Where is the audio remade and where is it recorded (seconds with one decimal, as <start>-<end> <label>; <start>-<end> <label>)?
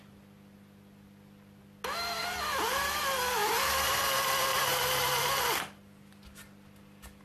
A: 0.0-2.2 recorded; 2.2-3.0 remade; 3.0-3.4 recorded; 3.4-4.0 remade; 4.0-4.5 recorded; 4.5-5.2 remade; 5.2-7.2 recorded